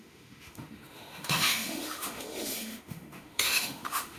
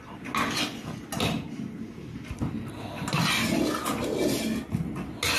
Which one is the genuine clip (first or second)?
second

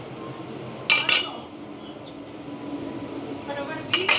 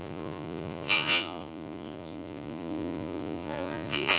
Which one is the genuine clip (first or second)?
first